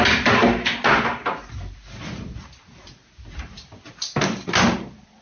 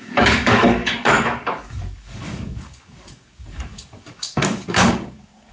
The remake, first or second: second